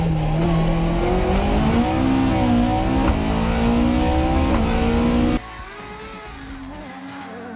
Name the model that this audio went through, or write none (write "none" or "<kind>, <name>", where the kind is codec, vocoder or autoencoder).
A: none